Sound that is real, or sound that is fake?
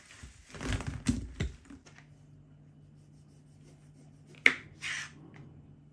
real